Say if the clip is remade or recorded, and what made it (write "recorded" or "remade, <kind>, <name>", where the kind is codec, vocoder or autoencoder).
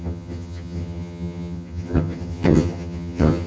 remade, vocoder, HiFi-GAN